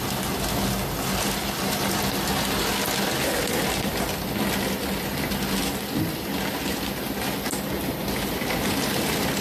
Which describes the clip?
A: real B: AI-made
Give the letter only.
A